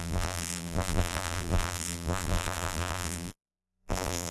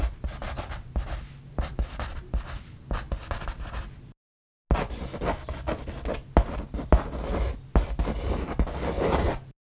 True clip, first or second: second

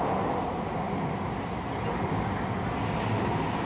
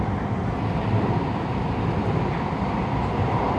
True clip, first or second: first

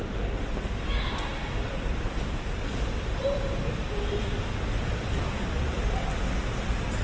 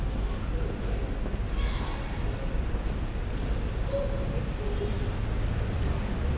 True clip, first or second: second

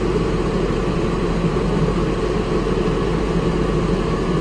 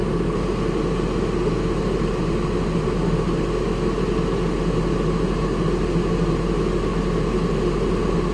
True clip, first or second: second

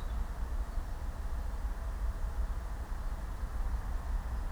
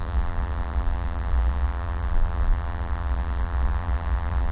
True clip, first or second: first